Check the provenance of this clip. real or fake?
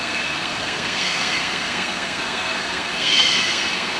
fake